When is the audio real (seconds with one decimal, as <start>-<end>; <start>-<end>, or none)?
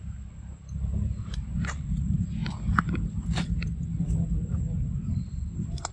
0.0-5.9